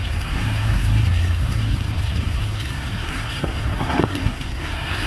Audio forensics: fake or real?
fake